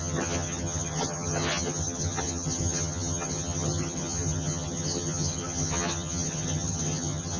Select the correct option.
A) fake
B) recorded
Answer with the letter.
A